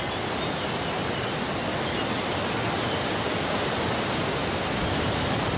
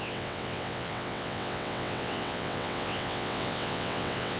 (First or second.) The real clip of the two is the first